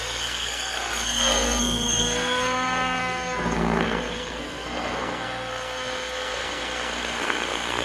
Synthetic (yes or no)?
yes